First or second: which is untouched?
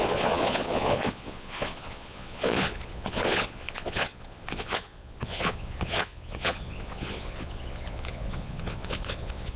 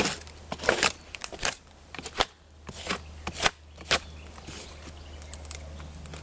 second